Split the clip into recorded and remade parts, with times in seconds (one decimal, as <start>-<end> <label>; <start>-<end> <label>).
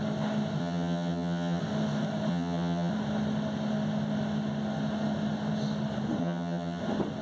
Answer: 0.0-0.6 recorded; 0.6-1.6 remade; 1.6-2.3 recorded; 2.3-2.9 remade; 2.9-6.2 recorded; 6.2-6.8 remade; 6.8-7.2 recorded